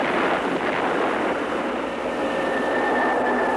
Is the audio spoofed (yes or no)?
no